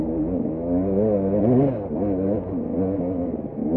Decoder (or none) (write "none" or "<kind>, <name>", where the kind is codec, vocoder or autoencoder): none